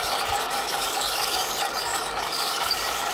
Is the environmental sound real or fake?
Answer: fake